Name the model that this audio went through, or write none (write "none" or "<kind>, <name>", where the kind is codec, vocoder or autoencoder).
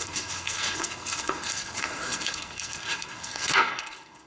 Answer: codec, SNAC